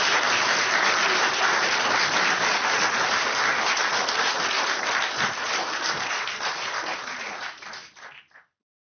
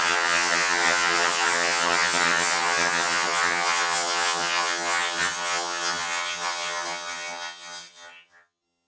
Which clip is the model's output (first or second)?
second